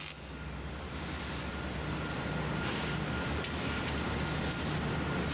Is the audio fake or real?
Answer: real